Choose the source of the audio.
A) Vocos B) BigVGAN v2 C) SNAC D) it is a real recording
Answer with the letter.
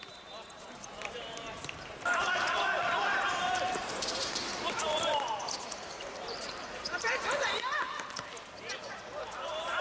B